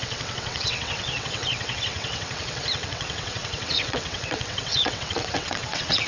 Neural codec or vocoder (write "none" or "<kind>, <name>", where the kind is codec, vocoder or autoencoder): vocoder, WaveNeXt